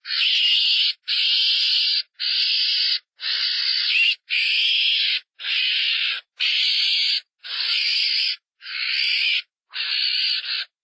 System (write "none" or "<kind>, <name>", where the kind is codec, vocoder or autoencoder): none